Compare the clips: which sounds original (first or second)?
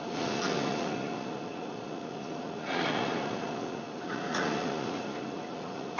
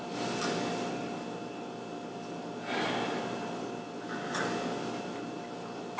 second